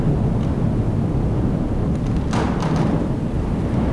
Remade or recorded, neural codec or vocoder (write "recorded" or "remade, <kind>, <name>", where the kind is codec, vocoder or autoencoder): recorded